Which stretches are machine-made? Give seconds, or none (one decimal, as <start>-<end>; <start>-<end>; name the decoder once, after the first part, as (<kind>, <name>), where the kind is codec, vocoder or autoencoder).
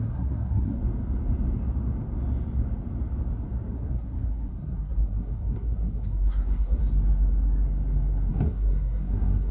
0.0-0.8 (codec, SNAC); 3.7-6.8; 8.3-9.5